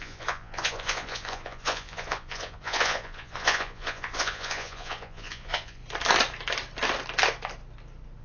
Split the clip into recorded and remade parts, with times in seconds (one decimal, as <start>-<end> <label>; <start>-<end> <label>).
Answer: 0.0-5.8 remade; 5.8-8.2 recorded